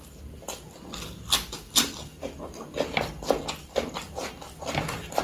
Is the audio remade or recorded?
recorded